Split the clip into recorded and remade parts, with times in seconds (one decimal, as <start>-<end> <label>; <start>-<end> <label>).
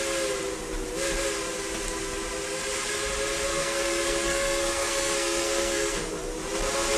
0.0-3.5 recorded; 3.5-6.1 remade; 6.1-7.0 recorded